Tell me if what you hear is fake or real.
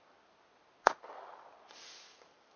real